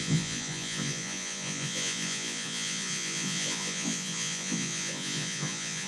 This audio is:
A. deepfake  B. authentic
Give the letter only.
A